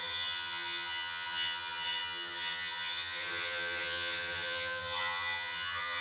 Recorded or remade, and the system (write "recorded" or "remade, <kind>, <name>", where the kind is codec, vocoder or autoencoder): remade, vocoder, HiFi-GAN